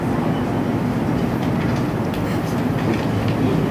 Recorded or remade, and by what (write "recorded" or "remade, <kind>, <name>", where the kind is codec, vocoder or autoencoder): recorded